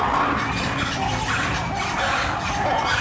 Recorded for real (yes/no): yes